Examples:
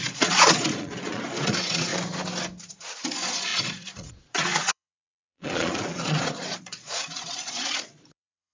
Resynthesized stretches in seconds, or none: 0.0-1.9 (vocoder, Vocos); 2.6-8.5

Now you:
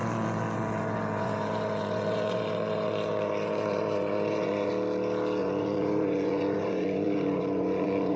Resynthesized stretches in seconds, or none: 0.0-4.7 (vocoder, Vocos); 5.4-8.2

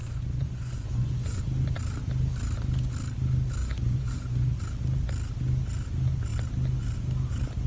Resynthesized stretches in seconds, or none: 0.0-1.4 (vocoder, Vocos); 3.6-4.6

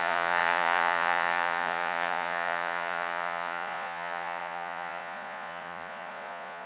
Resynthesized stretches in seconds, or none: 0.0-6.7 (vocoder, Vocos)

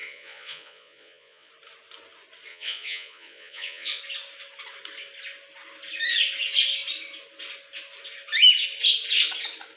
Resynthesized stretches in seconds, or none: 0.0-1.5 (vocoder, Vocos); 2.5-4.0

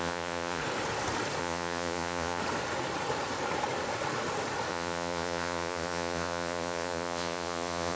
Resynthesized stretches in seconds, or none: 0.0-0.6 (vocoder, Vocos); 1.4-2.4; 4.7-8.0

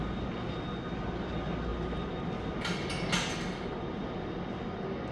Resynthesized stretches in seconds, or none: none